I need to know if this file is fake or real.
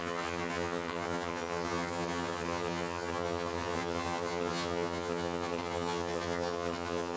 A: fake